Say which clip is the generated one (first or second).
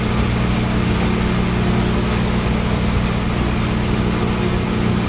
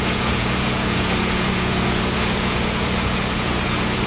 second